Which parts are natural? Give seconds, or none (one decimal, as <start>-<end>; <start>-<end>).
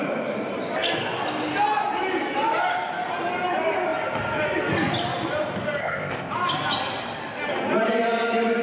0.0-5.8; 6.3-8.6